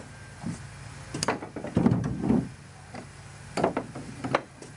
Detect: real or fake real